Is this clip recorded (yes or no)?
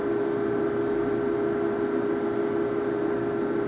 yes